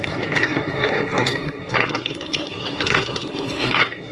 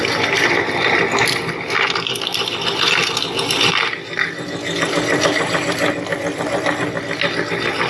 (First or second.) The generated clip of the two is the first